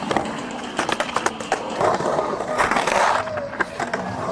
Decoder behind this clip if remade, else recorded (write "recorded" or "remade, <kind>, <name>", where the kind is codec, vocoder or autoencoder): remade, vocoder, BigVGAN v2